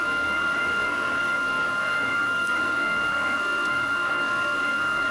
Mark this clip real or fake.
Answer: fake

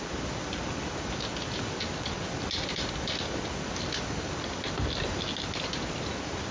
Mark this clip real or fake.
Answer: real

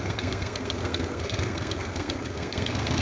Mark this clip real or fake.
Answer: fake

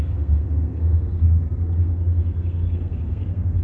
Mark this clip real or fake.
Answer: fake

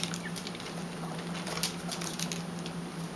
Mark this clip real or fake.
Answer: real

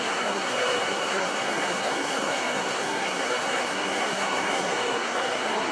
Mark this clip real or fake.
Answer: fake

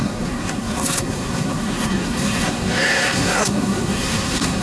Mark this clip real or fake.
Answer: fake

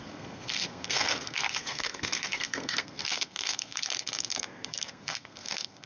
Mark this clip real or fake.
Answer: fake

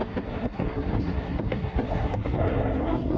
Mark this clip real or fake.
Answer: fake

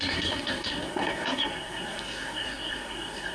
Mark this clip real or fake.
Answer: fake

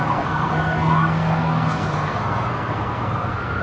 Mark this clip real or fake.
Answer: fake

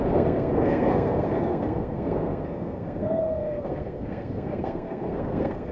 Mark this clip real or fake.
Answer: fake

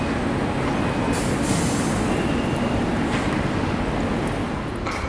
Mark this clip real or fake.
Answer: real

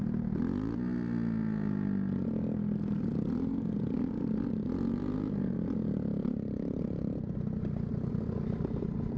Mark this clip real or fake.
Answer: real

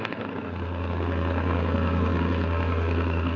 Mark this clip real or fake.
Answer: fake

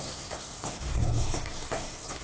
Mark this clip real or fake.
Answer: fake